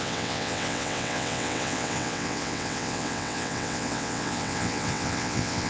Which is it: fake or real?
fake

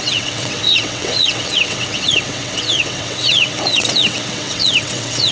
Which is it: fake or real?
fake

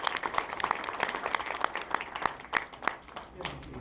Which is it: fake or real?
real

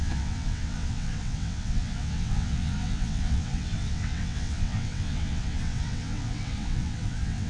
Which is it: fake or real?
fake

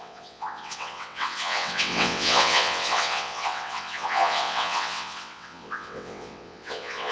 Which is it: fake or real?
fake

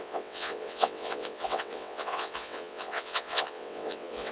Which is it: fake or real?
fake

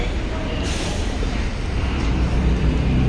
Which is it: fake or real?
real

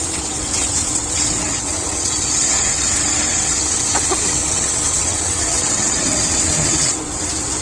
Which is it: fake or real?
fake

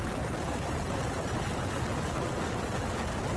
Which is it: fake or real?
real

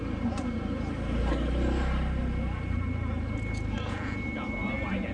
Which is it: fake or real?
real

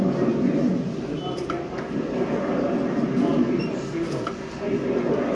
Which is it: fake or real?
real